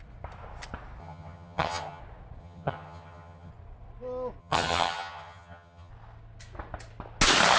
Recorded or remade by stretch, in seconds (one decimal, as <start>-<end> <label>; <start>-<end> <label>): 0.0-1.0 recorded; 1.0-2.0 remade; 2.0-2.4 recorded; 2.4-3.5 remade; 3.5-4.4 recorded; 4.4-5.9 remade; 5.9-7.6 recorded